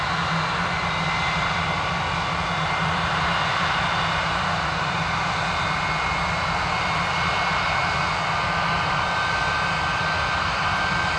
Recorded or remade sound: recorded